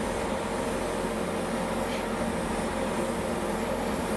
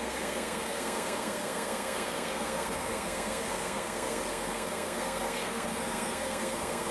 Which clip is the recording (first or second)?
first